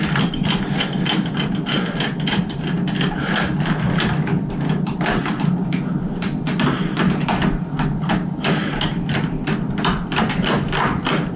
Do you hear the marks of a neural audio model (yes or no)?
no